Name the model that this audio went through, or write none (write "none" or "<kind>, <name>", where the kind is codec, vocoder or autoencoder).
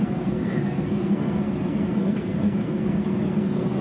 codec, SNAC